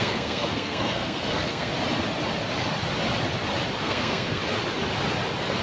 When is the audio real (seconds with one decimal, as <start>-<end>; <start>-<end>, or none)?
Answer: 1.7-3.8; 4.4-5.6